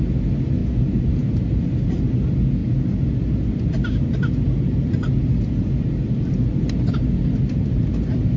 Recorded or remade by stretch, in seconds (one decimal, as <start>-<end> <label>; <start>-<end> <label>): 0.0-0.6 recorded; 0.6-1.1 remade; 1.1-8.4 recorded